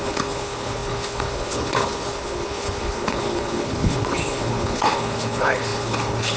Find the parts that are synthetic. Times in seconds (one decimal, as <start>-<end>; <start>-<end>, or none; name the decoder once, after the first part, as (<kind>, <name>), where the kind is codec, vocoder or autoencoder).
0.0-6.4 (codec, HILCodec)